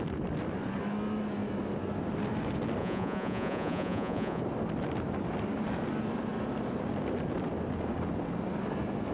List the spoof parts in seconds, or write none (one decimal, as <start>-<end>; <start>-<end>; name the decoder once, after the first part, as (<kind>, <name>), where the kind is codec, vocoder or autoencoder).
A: 2.8-4.4 (vocoder, Vocos)